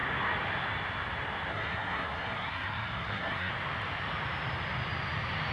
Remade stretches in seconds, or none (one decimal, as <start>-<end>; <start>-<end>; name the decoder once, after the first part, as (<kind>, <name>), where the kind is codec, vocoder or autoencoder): 1.5-3.5 (codec, SNAC)